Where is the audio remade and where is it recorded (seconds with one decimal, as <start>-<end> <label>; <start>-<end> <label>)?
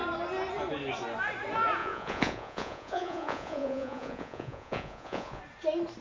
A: 0.0-1.8 recorded; 1.8-5.4 remade; 5.4-6.0 recorded